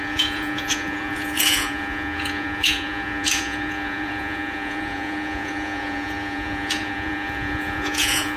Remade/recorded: remade